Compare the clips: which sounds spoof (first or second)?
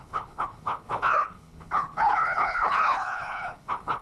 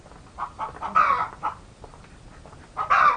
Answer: first